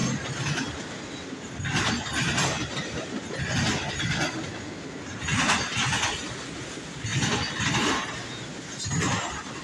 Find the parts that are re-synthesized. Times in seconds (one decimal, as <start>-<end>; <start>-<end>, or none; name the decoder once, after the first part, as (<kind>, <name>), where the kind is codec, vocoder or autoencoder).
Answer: none